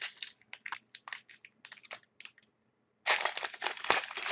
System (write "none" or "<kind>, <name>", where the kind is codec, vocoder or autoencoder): none